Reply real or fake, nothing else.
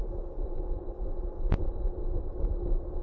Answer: real